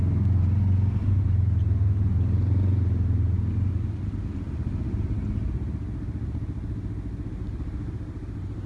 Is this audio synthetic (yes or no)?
no